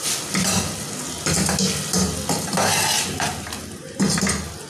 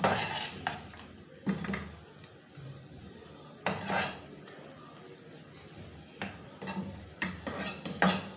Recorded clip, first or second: first